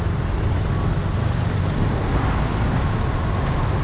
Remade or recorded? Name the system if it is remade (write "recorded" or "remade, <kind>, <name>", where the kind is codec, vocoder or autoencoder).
recorded